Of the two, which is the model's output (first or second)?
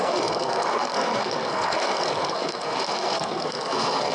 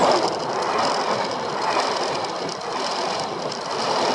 first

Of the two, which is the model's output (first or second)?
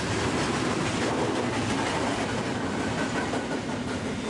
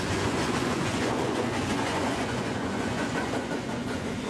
second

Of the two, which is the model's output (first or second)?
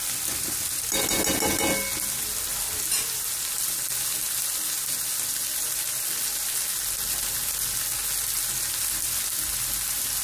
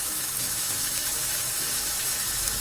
second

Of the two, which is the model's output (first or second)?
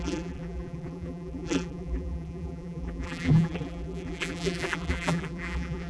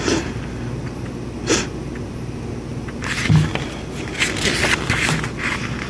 first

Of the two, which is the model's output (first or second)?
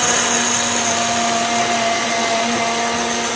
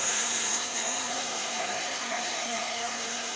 second